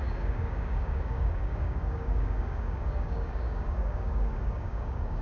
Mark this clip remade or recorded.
remade